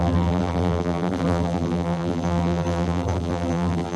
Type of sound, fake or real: fake